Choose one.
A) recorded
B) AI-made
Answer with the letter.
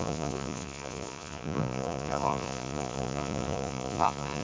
B